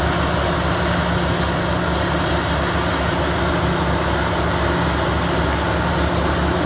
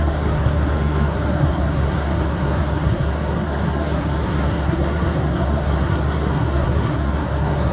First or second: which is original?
first